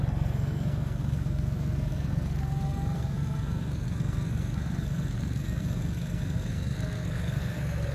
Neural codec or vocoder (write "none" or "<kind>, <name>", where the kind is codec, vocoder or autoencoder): codec, SNAC